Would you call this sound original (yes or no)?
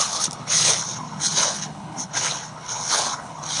no